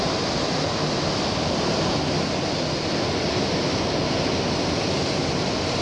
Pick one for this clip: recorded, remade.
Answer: recorded